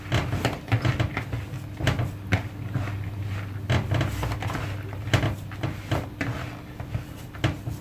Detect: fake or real real